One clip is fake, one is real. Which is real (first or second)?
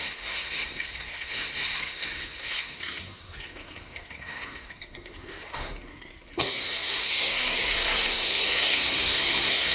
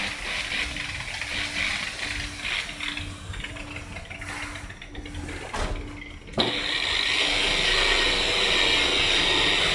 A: second